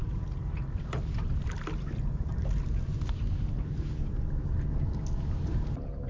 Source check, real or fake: real